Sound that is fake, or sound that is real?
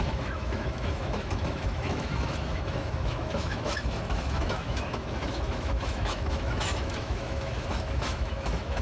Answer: fake